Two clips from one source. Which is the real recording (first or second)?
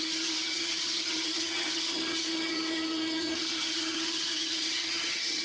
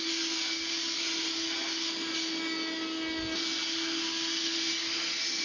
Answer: second